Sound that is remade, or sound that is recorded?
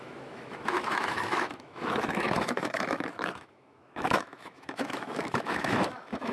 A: remade